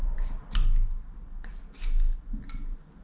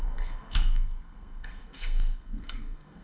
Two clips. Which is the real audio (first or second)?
first